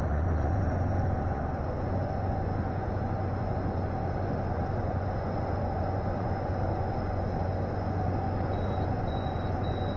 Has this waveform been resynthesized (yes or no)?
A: yes